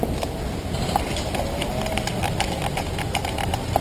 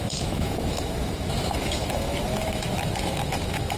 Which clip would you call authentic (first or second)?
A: first